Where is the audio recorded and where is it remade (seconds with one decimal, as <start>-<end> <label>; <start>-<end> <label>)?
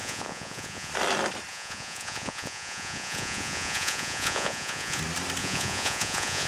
0.0-0.9 remade; 0.9-1.5 recorded; 1.5-5.0 remade; 5.0-5.4 recorded; 5.4-6.5 remade